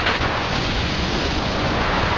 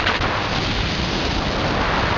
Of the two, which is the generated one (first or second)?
first